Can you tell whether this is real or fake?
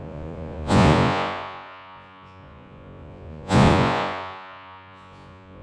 fake